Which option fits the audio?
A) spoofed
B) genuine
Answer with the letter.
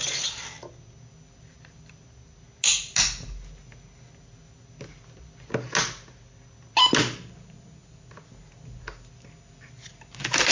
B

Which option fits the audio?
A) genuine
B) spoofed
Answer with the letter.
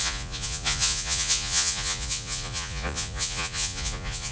B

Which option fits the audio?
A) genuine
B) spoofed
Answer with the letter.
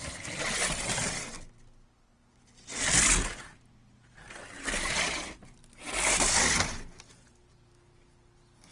A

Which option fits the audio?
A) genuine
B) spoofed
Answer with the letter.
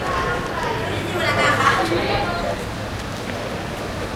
A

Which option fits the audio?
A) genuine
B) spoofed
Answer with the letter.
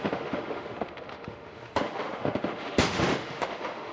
B